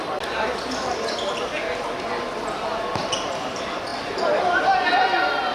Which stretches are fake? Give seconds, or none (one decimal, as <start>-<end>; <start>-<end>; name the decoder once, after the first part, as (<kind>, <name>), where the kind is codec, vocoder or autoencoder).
none